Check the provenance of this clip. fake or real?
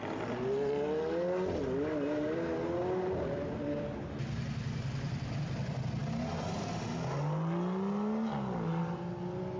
real